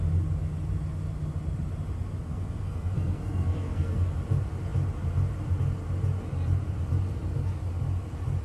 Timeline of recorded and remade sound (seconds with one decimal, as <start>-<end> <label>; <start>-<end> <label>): 0.0-2.3 recorded; 2.3-4.1 remade; 4.1-8.4 recorded